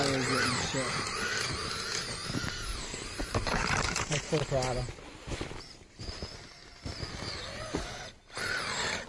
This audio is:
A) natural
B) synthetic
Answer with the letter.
A